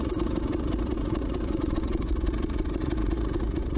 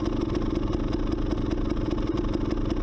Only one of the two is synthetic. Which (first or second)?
first